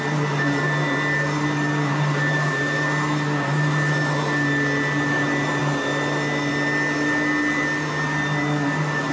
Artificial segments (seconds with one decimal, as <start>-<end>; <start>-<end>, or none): none